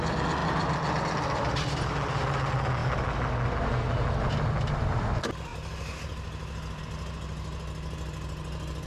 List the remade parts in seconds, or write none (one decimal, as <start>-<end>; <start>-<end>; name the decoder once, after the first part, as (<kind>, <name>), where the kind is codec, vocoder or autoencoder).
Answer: none